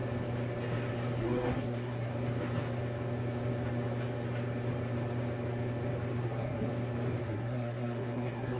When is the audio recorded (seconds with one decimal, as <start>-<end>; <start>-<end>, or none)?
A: 0.0-1.2; 2.1-6.2; 6.7-7.2

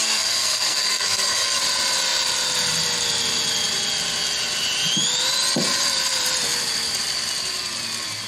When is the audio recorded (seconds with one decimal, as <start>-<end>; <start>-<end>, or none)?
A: 1.6-8.3

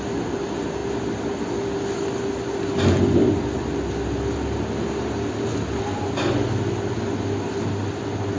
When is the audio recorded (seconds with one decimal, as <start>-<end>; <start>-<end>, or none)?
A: 0.0-8.4

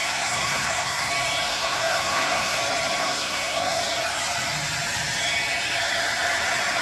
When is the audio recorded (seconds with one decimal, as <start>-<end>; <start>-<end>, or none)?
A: 1.1-1.5; 2.6-3.0; 3.8-6.8

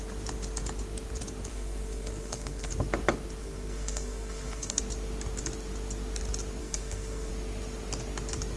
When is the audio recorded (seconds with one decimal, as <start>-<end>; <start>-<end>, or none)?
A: 0.0-1.5; 2.7-3.4; 4.8-6.6; 7.3-8.6

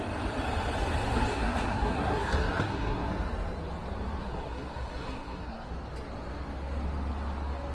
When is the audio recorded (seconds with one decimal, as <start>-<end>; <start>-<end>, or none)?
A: 0.0-1.3; 3.1-4.2; 5.7-7.7

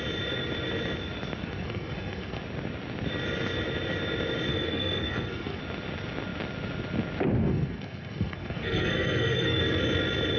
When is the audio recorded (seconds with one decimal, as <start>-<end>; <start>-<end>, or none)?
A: 0.0-1.4; 2.4-4.5; 5.6-7.4; 9.6-10.4

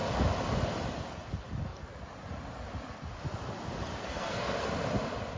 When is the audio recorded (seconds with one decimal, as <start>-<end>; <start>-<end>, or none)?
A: 0.0-3.9; 4.7-5.4